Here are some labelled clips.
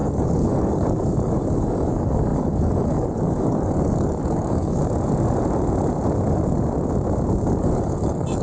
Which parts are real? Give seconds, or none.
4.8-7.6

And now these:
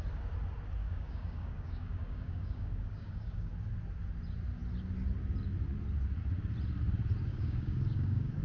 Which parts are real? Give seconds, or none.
0.0-0.8; 3.5-7.3

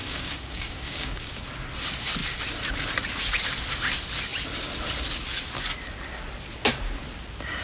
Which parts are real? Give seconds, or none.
1.5-7.6

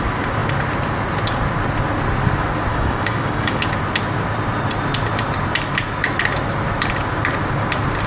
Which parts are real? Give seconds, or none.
0.0-2.7; 3.6-8.1

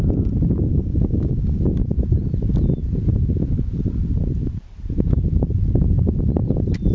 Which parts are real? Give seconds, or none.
0.0-0.7; 1.6-6.9